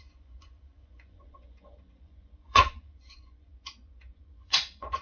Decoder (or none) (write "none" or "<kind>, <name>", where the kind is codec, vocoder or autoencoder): vocoder, Vocos